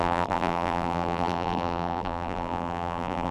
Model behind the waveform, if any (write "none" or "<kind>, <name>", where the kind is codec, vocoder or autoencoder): vocoder, BigVGAN v2